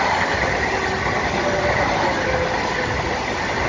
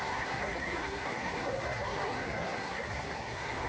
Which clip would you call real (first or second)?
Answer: first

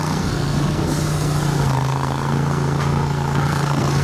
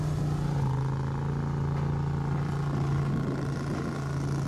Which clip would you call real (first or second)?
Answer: second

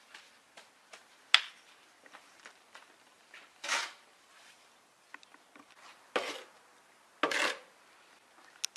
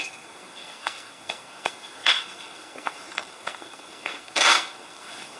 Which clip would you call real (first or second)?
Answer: first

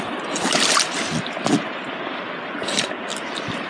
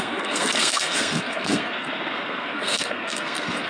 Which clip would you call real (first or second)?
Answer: first